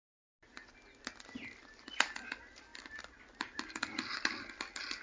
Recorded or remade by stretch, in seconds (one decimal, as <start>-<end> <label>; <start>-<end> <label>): 0.0-5.0 recorded